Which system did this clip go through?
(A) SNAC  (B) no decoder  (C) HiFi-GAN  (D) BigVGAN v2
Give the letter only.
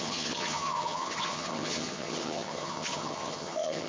C